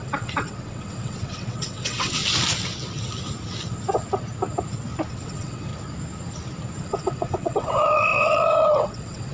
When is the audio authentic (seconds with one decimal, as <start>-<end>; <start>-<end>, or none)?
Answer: 2.2-5.1; 5.7-6.8